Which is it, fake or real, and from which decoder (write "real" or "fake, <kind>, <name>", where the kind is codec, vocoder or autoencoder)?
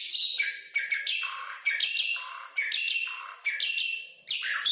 real